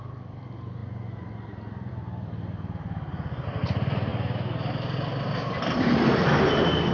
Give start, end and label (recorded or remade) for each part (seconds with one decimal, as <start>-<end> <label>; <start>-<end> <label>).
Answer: 0.0-6.9 recorded